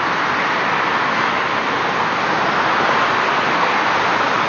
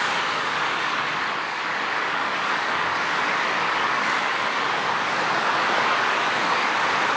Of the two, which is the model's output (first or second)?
second